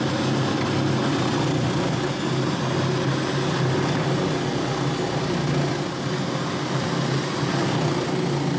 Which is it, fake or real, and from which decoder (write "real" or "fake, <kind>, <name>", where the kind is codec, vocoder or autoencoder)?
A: real